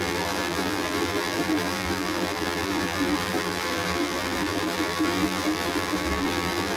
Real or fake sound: fake